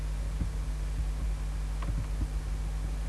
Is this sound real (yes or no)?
yes